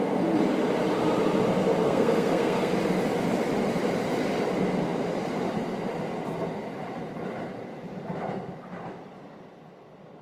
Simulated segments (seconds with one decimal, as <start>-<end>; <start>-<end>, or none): 1.8-2.7